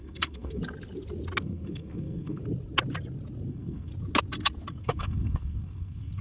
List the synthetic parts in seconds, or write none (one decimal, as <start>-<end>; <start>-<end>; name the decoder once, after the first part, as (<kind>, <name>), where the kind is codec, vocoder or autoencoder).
0.0-0.6 (codec, SNAC); 1.4-2.4; 3.5-3.9; 4.7-6.2